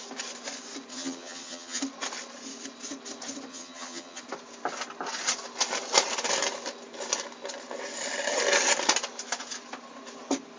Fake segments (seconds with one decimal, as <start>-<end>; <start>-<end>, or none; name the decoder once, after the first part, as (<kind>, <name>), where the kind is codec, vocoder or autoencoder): 0.9-1.8 (vocoder, HiFi-GAN); 3.5-4.2